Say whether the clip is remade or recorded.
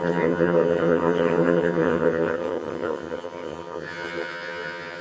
remade